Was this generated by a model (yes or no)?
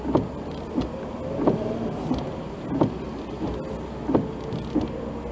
no